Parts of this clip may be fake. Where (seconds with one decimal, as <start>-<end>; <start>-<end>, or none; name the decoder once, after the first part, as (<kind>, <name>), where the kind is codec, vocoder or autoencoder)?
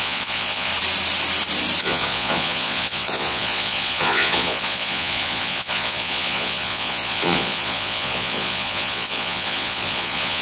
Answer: 0.0-0.7 (vocoder, Vocos); 1.8-10.4